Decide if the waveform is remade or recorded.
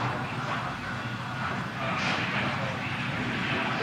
recorded